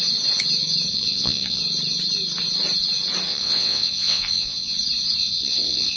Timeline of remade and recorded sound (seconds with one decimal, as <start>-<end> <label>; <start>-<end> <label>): 0.0-0.9 recorded; 0.9-1.6 remade; 1.6-3.3 recorded; 3.3-4.7 remade; 4.7-5.2 recorded; 5.2-6.0 remade